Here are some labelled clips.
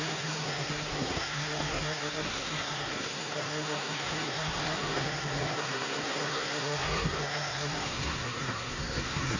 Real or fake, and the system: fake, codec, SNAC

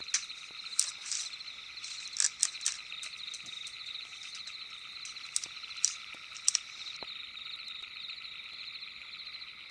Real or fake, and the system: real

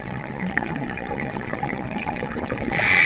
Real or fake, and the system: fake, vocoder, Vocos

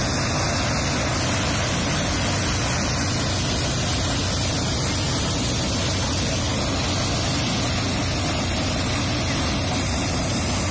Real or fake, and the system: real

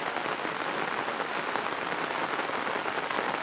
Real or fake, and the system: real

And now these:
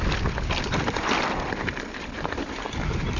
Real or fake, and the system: fake, vocoder, BigVGAN v2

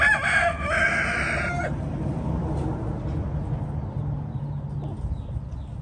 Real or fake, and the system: real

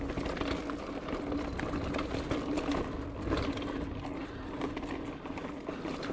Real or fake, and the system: real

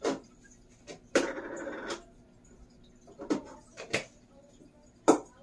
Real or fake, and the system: real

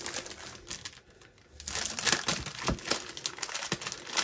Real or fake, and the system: real